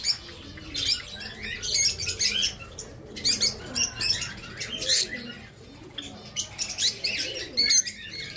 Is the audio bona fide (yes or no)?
yes